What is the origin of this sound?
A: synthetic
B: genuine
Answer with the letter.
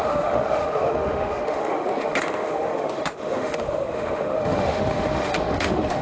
A